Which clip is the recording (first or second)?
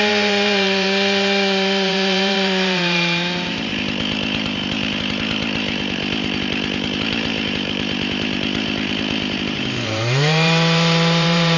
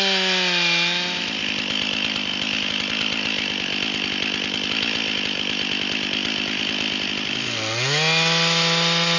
second